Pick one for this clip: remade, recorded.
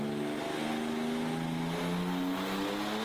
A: recorded